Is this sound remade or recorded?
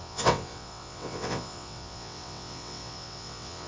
remade